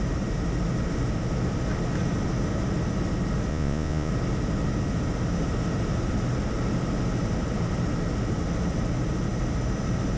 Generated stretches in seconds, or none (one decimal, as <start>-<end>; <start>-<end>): 3.5-4.1